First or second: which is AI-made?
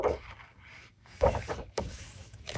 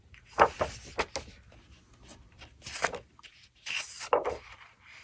first